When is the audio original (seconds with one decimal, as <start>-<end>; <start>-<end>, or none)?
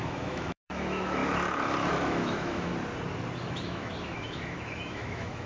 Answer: 1.2-1.9; 2.7-3.5